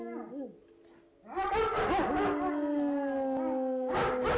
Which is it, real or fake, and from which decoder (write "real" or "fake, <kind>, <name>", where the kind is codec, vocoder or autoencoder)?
real